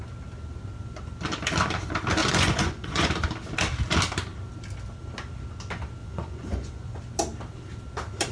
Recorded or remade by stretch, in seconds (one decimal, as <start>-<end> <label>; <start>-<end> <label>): 0.0-2.2 recorded; 2.2-3.1 remade; 3.1-6.0 recorded; 6.0-7.0 remade; 7.0-8.3 recorded